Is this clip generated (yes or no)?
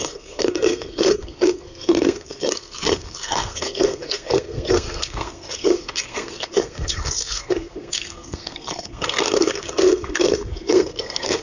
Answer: yes